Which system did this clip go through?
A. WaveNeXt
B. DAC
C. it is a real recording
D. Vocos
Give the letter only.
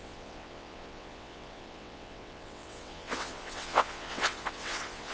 A